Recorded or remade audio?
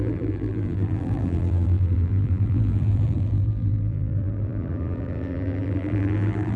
remade